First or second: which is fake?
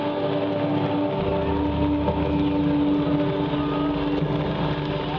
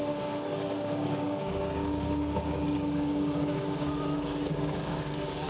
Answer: second